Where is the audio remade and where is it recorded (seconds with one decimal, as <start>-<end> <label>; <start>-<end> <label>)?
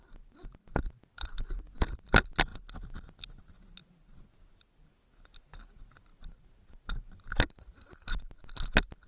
0.0-6.1 recorded; 6.1-7.6 remade; 7.6-9.1 recorded